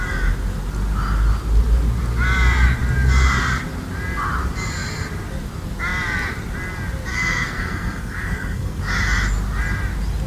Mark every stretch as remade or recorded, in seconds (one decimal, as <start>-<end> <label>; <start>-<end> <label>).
0.0-7.1 recorded; 7.1-8.8 remade; 8.8-10.3 recorded